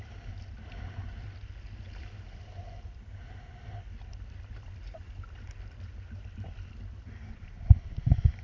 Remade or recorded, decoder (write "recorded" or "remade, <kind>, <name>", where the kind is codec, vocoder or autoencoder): recorded